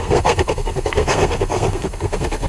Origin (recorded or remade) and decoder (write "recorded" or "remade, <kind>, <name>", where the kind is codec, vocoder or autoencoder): remade, codec, SNAC